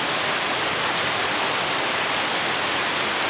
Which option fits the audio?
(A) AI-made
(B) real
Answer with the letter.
B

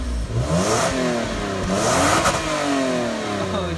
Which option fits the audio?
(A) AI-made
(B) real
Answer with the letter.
B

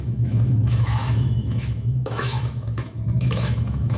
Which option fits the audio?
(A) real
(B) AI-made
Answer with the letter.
B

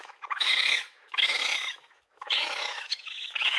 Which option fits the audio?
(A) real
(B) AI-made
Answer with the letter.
B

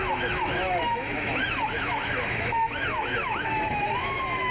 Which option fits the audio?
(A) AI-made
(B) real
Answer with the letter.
A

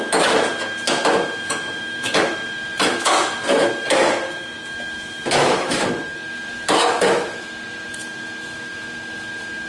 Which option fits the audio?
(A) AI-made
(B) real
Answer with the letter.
A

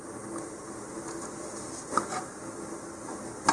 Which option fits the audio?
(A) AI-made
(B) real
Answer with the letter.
B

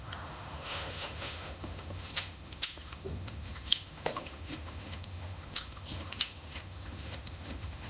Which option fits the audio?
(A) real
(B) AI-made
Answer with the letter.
B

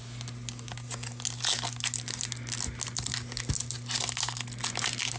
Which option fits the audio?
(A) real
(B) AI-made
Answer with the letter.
A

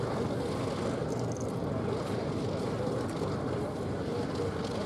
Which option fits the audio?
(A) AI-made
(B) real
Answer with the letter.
B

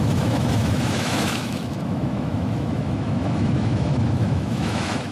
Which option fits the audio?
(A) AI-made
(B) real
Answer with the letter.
A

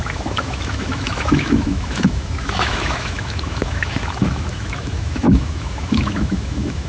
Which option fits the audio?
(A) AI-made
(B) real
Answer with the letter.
A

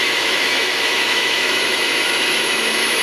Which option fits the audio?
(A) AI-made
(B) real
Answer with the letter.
A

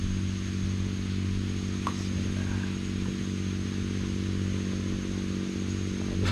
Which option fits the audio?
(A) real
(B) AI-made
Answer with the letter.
A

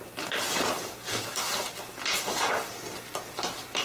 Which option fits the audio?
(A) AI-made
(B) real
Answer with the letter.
B